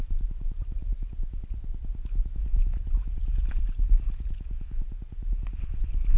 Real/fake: real